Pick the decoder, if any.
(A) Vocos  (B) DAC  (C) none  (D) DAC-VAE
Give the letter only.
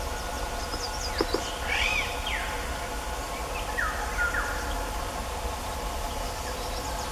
C